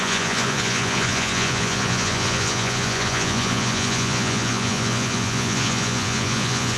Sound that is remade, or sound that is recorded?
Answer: remade